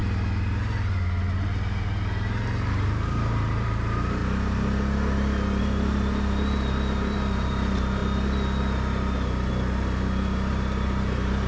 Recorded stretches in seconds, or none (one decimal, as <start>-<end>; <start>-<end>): 0.0-2.7; 4.2-5.6; 8.0-10.5